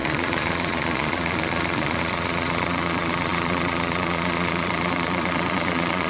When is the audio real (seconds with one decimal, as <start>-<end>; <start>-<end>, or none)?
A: none